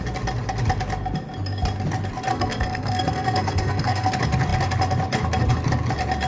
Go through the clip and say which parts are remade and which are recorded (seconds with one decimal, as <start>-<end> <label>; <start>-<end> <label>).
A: 0.0-2.3 recorded; 2.3-4.1 remade; 4.1-6.3 recorded